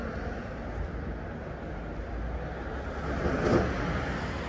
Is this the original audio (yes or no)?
yes